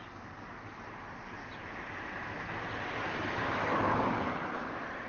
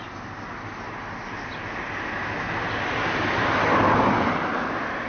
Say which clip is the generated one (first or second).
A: first